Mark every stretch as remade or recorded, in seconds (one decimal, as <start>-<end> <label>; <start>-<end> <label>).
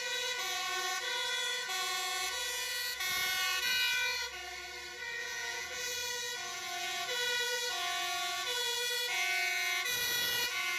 0.0-0.4 remade; 0.4-1.5 recorded; 1.5-3.7 remade; 3.7-5.2 recorded; 5.2-10.8 remade